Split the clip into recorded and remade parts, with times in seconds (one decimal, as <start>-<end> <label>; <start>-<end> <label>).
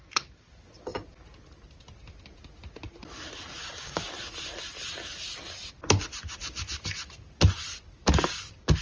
0.0-3.6 recorded; 3.6-4.1 remade; 4.1-8.8 recorded